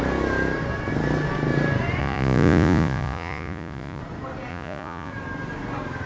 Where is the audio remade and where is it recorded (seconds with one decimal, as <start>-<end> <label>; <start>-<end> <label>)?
0.0-2.0 recorded; 2.0-4.0 remade; 4.0-4.5 recorded; 4.5-5.1 remade; 5.1-6.1 recorded